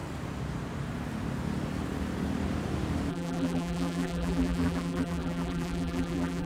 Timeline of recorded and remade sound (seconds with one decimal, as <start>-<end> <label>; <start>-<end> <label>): 0.0-3.1 recorded; 3.1-6.5 remade